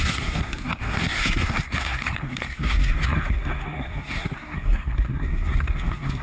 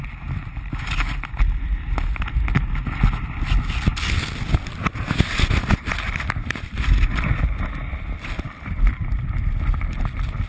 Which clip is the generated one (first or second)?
first